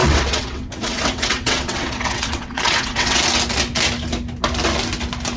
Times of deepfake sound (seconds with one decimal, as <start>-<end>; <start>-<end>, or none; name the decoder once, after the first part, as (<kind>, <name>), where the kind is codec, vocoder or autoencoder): 0.0-3.2 (vocoder, WaveNeXt)